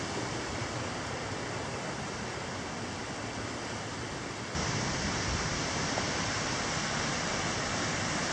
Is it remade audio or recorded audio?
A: recorded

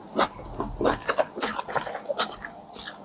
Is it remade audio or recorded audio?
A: recorded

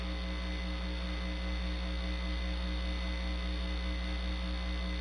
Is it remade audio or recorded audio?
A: recorded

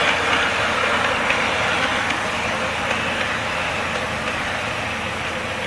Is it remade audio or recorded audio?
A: recorded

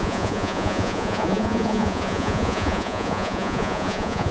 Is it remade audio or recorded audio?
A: remade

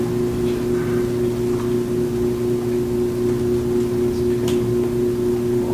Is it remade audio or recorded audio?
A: recorded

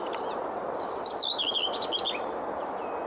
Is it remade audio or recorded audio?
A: recorded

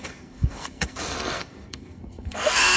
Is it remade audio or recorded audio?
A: remade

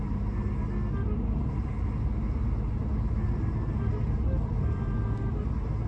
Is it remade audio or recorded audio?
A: recorded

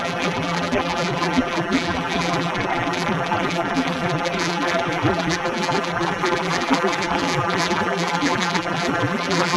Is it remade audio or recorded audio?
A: remade